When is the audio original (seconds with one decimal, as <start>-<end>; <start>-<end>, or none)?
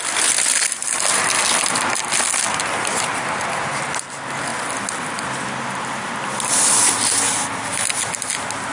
0.0-8.7